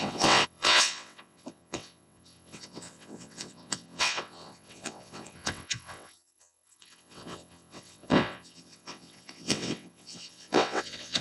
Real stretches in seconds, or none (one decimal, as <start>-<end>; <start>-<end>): none